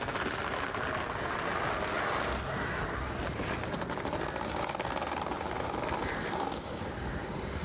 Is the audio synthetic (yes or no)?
no